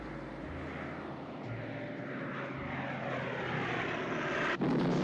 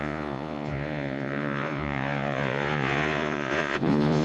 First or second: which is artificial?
second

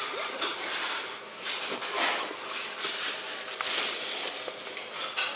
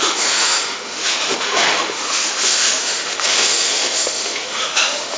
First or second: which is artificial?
second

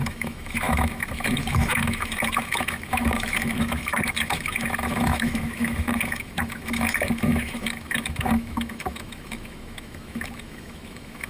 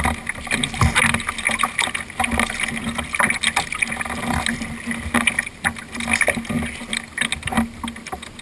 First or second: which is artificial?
first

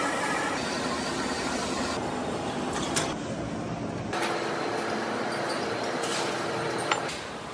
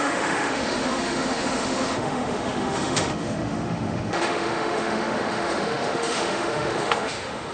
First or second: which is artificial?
second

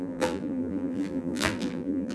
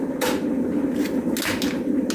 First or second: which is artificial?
first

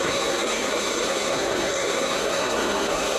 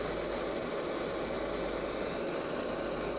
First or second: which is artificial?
first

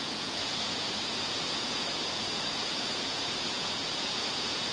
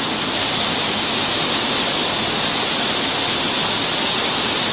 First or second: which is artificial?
first